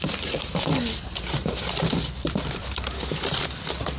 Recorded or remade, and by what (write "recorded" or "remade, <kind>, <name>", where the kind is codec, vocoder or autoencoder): remade, vocoder, BigVGAN v2